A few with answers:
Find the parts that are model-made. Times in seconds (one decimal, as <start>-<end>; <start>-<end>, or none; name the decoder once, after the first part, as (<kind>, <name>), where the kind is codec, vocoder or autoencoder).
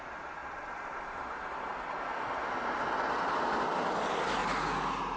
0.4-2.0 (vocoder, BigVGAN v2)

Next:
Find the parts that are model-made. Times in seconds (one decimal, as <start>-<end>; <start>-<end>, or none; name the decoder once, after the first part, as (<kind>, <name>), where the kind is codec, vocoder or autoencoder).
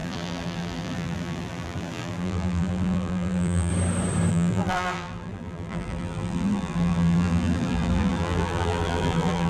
0.0-3.7 (vocoder, BigVGAN v2); 4.3-9.5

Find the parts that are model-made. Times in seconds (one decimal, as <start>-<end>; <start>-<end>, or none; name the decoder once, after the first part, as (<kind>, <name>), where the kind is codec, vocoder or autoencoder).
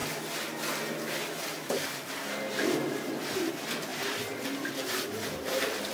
3.9-5.9 (vocoder, BigVGAN v2)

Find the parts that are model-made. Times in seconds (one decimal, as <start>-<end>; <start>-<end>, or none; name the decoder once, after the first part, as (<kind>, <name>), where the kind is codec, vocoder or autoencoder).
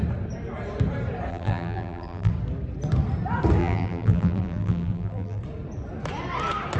1.3-2.3 (vocoder, BigVGAN v2); 3.6-5.4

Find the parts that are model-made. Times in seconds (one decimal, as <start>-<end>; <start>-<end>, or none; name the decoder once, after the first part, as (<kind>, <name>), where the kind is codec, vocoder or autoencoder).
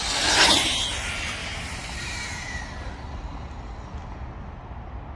1.4-2.6 (vocoder, BigVGAN v2)